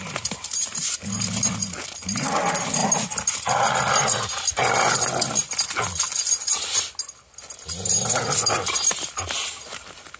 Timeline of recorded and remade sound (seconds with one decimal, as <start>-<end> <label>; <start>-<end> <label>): 0.0-10.2 recorded